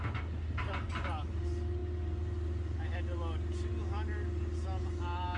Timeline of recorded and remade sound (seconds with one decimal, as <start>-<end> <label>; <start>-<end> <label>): 0.0-5.4 recorded